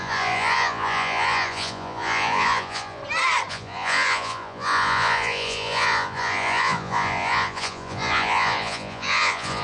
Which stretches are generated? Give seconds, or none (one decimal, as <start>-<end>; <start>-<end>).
0.0-3.0; 3.5-9.6